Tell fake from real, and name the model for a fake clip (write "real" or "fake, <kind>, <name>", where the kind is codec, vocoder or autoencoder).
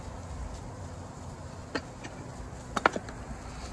real